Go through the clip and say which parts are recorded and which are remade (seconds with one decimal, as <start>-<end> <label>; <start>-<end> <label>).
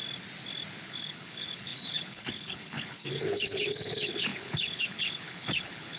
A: 0.0-0.8 recorded; 0.8-6.0 remade